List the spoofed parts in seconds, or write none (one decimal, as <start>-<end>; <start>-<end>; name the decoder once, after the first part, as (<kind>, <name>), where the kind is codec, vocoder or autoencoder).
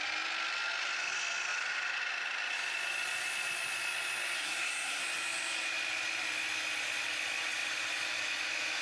4.4-5.0 (codec, SNAC)